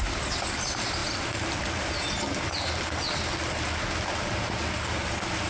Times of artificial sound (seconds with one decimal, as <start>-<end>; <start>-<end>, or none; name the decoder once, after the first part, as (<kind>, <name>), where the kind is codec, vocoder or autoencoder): none